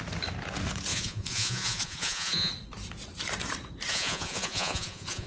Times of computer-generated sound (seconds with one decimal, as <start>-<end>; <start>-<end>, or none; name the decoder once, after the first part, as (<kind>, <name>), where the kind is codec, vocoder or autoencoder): 0.9-2.5 (vocoder, Vocos); 3.9-5.3